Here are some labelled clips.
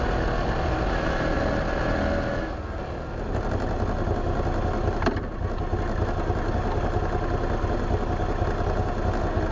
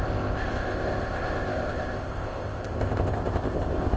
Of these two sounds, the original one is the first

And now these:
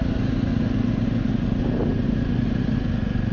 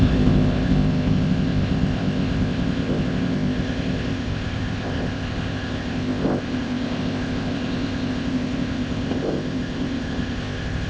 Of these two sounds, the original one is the first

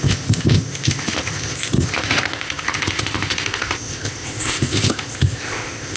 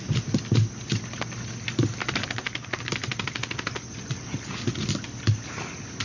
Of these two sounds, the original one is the second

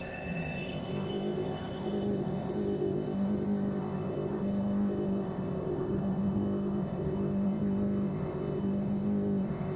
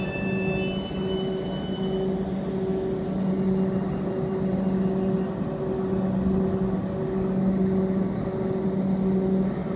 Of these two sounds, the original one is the second